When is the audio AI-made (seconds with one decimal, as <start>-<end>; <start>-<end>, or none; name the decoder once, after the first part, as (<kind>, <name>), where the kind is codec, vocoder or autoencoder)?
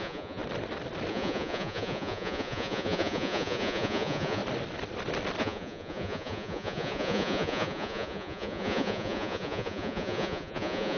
0.0-0.4 (vocoder, Vocos); 1.1-4.4; 5.4-11.0